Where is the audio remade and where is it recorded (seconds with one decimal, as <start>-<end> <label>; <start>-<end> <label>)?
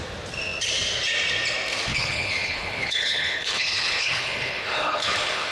0.0-1.9 recorded; 1.9-5.5 remade